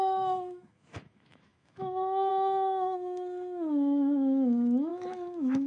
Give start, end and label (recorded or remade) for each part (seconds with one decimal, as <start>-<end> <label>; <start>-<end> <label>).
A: 0.0-5.7 remade

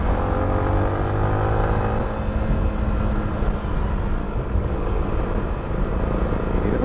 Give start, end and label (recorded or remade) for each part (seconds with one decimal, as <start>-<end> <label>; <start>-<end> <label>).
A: 0.0-4.2 recorded; 4.2-5.1 remade; 5.1-6.8 recorded